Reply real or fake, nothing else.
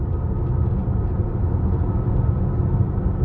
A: real